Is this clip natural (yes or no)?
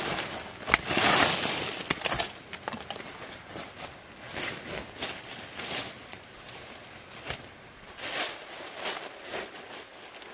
yes